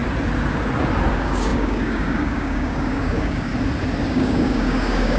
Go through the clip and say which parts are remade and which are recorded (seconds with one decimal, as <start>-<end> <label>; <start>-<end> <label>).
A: 0.0-1.1 recorded; 1.1-3.5 remade; 3.5-4.1 recorded; 4.1-5.2 remade